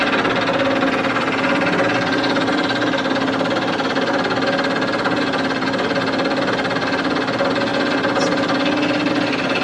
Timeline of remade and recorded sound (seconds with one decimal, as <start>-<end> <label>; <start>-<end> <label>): 0.0-9.6 recorded